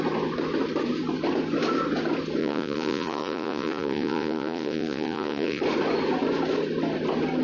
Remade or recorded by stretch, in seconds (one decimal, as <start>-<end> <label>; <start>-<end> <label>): 0.0-2.4 recorded; 2.4-5.6 remade; 5.6-7.4 recorded